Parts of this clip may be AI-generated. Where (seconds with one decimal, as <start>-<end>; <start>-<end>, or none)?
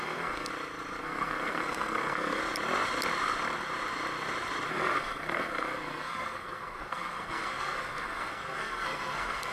0.0-0.5; 1.0-2.4; 4.7-9.5